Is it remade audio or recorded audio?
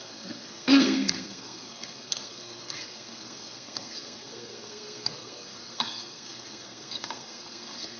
remade